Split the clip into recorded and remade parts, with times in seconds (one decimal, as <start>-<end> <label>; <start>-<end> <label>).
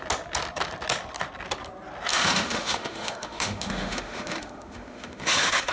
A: 0.0-2.1 recorded; 2.1-5.7 remade